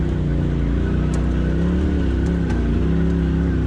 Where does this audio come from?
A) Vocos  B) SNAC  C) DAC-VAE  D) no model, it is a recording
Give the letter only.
D